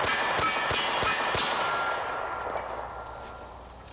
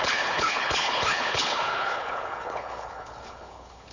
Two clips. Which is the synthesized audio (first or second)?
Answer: second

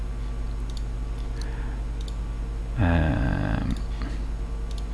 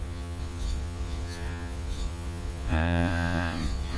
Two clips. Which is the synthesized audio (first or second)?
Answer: second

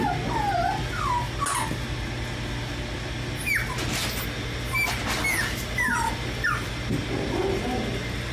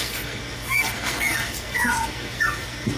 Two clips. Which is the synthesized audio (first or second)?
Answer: second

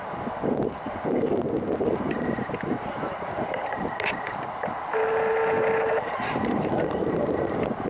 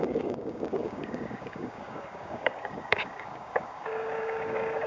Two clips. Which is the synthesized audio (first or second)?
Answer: second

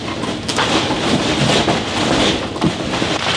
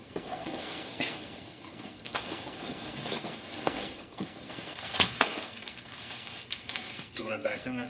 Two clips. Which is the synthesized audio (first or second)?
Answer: second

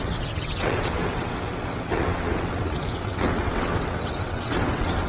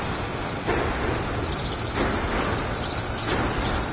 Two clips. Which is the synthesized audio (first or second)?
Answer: first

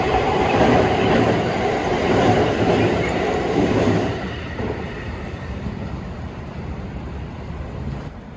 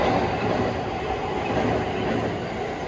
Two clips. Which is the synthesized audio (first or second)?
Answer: first